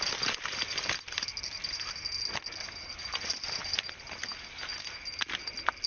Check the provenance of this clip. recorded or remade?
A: recorded